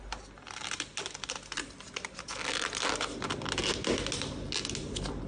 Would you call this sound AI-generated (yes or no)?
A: no